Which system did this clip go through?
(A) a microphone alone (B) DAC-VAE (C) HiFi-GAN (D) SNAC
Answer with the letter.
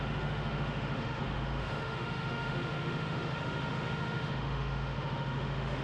B